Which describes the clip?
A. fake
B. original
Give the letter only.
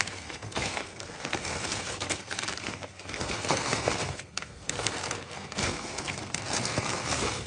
A